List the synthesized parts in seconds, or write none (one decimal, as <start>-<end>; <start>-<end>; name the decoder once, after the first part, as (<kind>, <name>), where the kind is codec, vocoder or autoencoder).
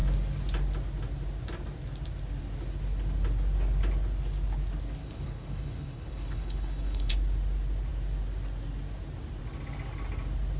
5.0-7.1 (codec, HILCodec)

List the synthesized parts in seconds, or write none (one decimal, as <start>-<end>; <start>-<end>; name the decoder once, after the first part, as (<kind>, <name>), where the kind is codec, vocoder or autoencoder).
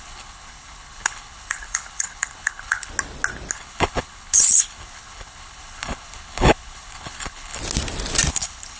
0.0-2.9 (codec, HILCodec); 3.5-7.6; 8.3-8.8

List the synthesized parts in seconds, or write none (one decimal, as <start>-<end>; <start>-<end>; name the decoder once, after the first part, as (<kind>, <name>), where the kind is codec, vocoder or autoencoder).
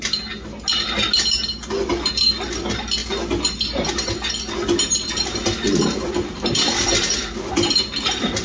none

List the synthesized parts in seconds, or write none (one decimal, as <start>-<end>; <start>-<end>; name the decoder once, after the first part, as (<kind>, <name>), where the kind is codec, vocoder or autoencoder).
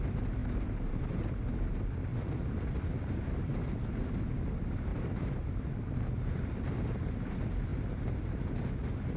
0.4-1.3 (vocoder, BigVGAN v2); 4.9-6.7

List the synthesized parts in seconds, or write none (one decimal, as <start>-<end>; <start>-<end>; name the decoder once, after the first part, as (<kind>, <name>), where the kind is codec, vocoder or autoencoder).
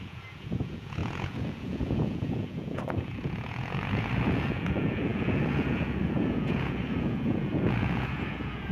0.0-8.7 (vocoder, Vocos)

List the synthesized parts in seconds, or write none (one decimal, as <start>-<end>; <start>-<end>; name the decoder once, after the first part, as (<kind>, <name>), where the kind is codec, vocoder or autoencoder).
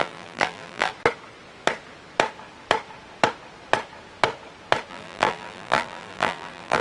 0.0-0.9 (vocoder, BigVGAN v2); 4.9-6.8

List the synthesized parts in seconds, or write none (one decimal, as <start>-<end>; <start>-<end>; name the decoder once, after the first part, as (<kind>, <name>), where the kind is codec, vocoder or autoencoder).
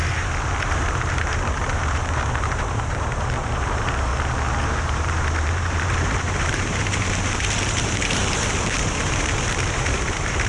0.7-4.1 (vocoder, BigVGAN v2); 4.8-10.5